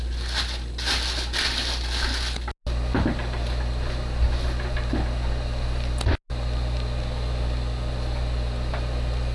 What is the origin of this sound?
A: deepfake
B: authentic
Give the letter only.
B